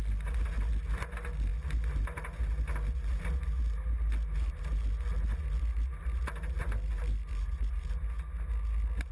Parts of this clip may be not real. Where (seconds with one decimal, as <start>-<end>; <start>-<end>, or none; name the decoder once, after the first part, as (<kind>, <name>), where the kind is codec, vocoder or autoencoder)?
none